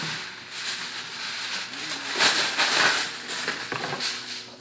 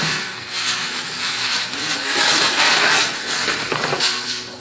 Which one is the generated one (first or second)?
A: second